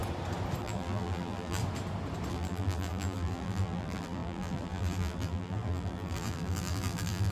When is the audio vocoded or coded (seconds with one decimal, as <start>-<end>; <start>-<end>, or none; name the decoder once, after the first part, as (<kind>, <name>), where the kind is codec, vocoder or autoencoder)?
0.6-1.6 (vocoder, BigVGAN v2); 2.3-7.3